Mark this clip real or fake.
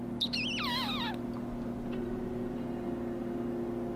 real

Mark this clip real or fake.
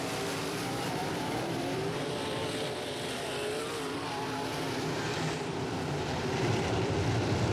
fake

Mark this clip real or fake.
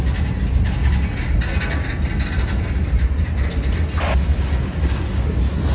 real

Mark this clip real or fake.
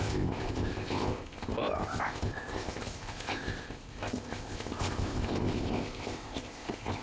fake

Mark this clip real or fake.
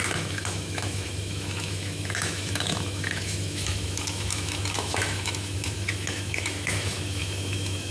fake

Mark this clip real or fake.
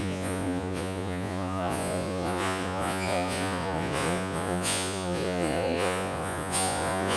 fake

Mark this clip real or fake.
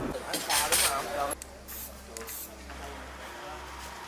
real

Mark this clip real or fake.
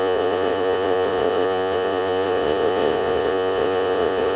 fake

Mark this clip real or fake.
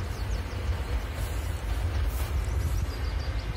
real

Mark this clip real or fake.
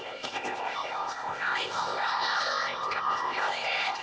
fake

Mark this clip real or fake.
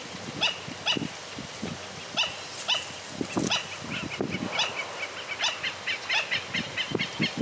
real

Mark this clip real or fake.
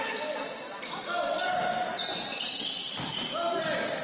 real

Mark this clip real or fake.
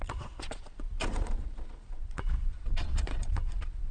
fake